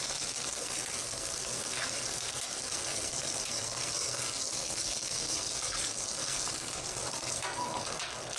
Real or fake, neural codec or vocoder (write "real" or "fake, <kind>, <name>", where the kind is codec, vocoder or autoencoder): fake, codec, SNAC